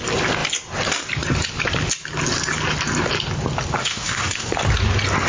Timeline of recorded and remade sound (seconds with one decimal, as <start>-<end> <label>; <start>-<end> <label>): 0.0-3.8 recorded; 3.8-4.5 remade; 4.5-5.3 recorded